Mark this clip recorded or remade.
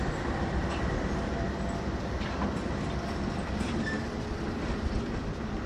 recorded